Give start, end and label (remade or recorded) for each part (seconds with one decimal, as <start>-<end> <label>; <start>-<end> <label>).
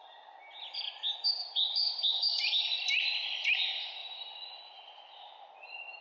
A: 0.0-1.4 recorded; 1.4-2.8 remade; 2.8-4.0 recorded; 4.0-5.5 remade; 5.5-6.0 recorded